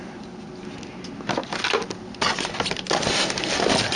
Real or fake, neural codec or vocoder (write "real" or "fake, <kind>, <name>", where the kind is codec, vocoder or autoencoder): real